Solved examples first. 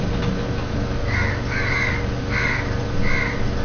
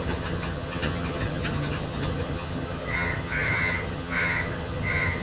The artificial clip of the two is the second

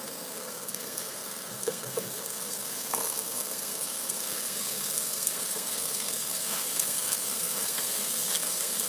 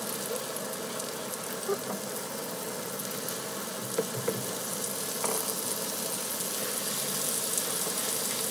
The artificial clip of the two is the first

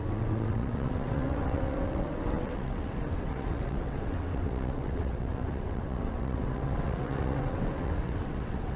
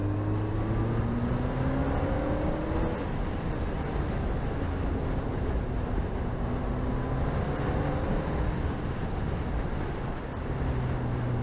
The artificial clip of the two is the first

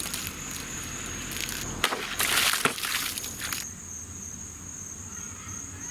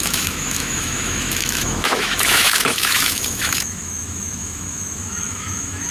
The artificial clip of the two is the second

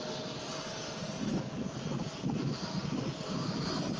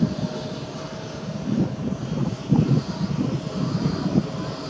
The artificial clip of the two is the second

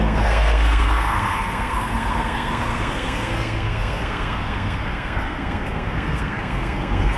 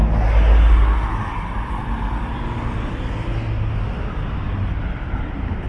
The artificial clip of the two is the first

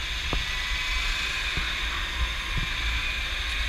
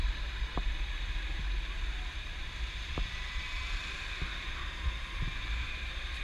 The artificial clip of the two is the second